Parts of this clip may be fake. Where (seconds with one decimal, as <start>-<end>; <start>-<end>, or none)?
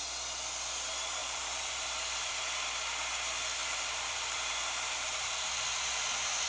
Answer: 1.2-2.3; 3.6-5.3